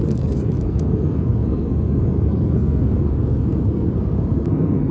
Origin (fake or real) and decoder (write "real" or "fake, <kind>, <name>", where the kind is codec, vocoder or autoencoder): fake, codec, SNAC